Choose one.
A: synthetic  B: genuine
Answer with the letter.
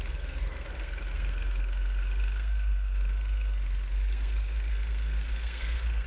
A